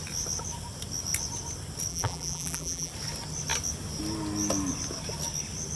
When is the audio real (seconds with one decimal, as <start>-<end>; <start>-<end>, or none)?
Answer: 0.0-1.9; 2.9-5.8